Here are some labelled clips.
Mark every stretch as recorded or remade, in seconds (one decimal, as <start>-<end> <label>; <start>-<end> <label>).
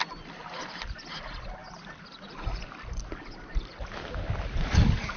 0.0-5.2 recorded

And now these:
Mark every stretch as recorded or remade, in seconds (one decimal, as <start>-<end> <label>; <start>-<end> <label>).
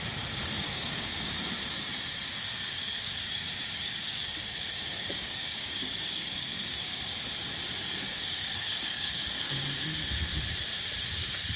0.0-0.7 recorded; 0.7-1.4 remade; 1.4-2.5 recorded; 2.5-7.0 remade; 7.0-7.8 recorded; 7.8-9.5 remade; 9.5-11.6 recorded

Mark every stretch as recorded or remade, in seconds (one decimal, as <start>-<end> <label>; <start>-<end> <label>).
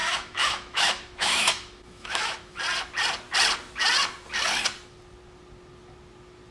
0.0-2.6 remade; 2.6-6.5 recorded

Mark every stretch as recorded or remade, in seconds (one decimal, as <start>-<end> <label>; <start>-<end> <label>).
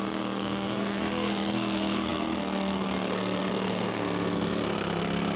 0.0-5.4 remade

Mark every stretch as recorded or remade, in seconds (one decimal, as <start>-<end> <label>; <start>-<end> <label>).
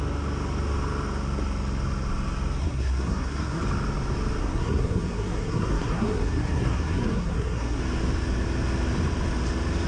0.0-2.6 recorded; 2.6-3.6 remade; 3.6-4.4 recorded; 4.4-7.8 remade; 7.8-9.9 recorded